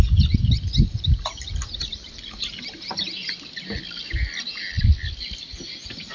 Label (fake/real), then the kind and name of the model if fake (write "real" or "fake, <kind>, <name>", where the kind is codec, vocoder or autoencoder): real